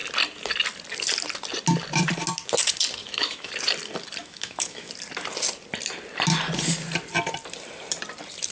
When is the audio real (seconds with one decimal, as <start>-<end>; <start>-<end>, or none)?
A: 0.0-3.0; 3.5-4.2; 4.9-8.5

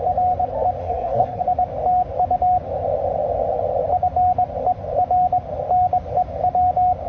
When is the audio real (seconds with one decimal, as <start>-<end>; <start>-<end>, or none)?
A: 0.0-0.8; 1.4-7.1

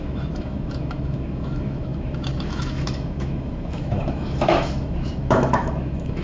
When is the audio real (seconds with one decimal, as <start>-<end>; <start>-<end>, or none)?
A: none

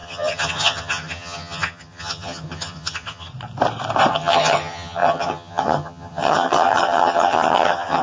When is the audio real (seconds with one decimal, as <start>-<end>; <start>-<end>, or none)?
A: 3.3-4.1

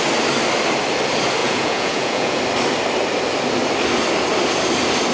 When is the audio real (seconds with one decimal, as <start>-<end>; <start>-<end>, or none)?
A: 0.0-1.4; 2.4-5.1

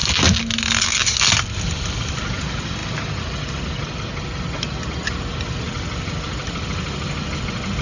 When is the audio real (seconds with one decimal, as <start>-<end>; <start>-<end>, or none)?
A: 0.0-1.3; 2.8-5.6